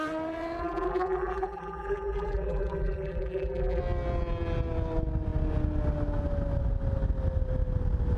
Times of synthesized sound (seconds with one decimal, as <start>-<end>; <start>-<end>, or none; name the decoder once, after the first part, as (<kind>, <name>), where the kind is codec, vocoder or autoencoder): 0.6-3.8 (vocoder, BigVGAN v2)